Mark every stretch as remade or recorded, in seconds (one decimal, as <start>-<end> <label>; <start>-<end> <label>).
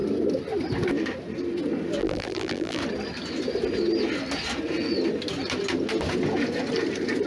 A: 0.0-2.0 recorded; 2.0-2.8 remade; 2.8-7.3 recorded